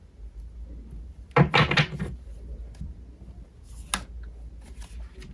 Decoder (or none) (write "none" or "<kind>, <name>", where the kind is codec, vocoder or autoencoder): none